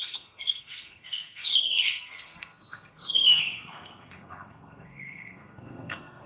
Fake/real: fake